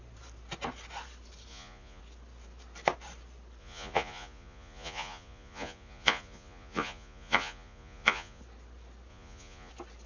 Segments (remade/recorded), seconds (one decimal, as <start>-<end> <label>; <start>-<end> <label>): 0.0-1.5 recorded; 1.5-2.0 remade; 2.0-3.6 recorded; 3.6-8.4 remade; 8.4-9.1 recorded; 9.1-9.7 remade; 9.7-10.1 recorded